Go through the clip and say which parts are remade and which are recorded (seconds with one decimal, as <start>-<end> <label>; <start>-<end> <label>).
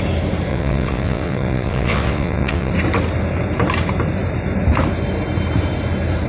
0.0-0.5 recorded; 0.5-2.7 remade; 2.7-6.3 recorded